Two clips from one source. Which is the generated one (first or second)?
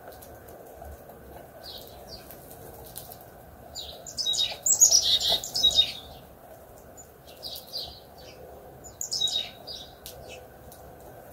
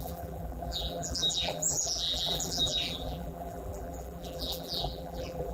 second